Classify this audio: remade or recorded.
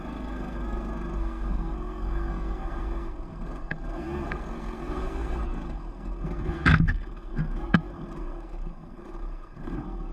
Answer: remade